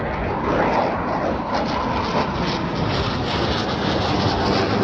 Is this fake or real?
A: real